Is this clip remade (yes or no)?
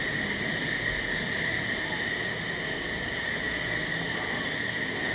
no